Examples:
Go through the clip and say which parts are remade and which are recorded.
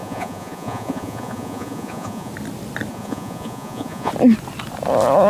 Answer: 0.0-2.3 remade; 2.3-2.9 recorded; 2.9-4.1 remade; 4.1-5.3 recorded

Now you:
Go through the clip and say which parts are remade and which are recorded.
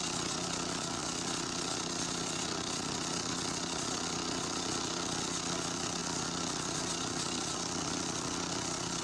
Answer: 0.0-9.0 remade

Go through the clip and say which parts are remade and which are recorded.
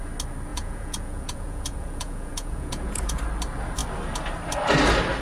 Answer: 0.0-0.5 recorded; 0.5-3.2 remade; 3.2-5.2 recorded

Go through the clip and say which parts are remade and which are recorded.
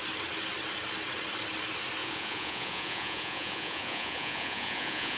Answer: 0.0-2.0 recorded; 2.0-5.2 remade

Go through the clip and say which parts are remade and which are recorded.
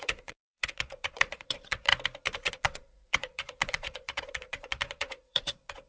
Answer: 0.0-1.9 remade; 1.9-2.5 recorded; 2.5-5.9 remade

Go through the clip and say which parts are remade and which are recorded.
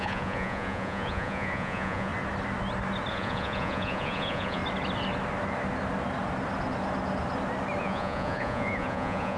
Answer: 0.0-2.1 remade; 2.1-3.1 recorded; 3.1-4.6 remade; 4.6-7.8 recorded; 7.8-9.4 remade